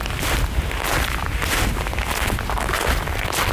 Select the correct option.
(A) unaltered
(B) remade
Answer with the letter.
A